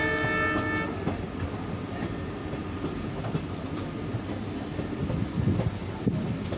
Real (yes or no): yes